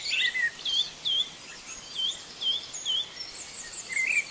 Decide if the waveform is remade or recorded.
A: remade